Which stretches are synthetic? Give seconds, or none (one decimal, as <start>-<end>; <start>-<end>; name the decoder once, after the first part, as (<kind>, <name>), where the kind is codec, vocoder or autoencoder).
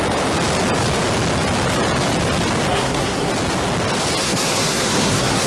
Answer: 2.7-3.3 (codec, SNAC); 4.2-5.5